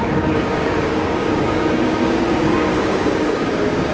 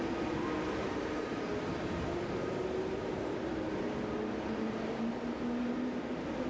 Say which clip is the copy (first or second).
first